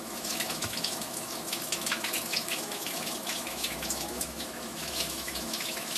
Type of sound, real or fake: fake